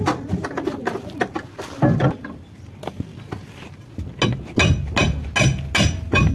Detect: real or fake real